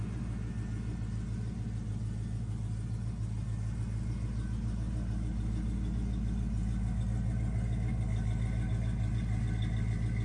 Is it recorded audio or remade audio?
recorded